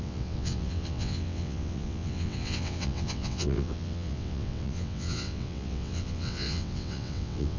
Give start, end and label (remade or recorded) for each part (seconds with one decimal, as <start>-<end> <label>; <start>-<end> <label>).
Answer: 0.0-7.6 remade